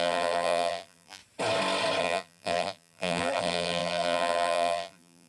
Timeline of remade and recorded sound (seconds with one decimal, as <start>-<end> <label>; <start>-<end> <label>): 0.0-1.2 remade; 1.2-2.0 recorded; 2.0-5.3 remade